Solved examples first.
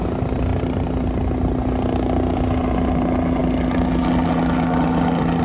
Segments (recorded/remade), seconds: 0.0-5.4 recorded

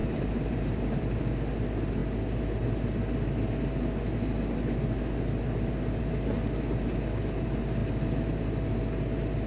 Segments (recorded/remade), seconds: 0.0-1.2 remade; 1.2-9.5 recorded

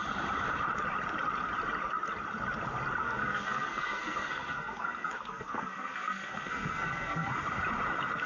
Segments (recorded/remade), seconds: 0.0-3.0 recorded; 3.0-7.3 remade; 7.3-8.3 recorded

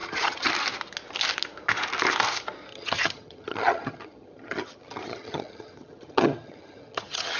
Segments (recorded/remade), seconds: 0.0-0.5 remade; 0.5-2.7 recorded; 2.7-7.4 remade

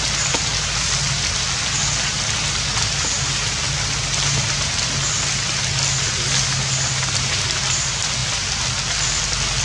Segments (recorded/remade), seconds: 0.0-9.6 recorded

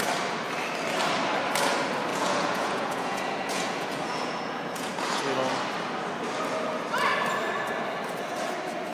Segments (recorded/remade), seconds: 0.0-2.1 recorded; 2.1-5.2 remade; 5.2-8.9 recorded

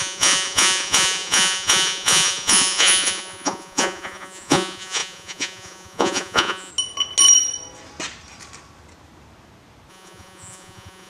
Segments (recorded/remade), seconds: 0.0-6.7 remade; 6.7-9.9 recorded; 9.9-11.1 remade

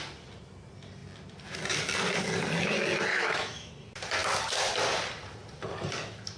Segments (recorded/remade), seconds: 0.0-3.1 recorded; 3.1-3.7 remade; 3.7-6.4 recorded